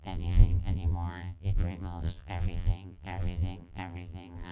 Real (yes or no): no